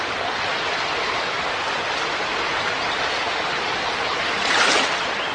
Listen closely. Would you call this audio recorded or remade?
recorded